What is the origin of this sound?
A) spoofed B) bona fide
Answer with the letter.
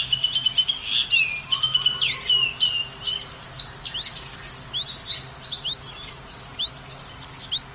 B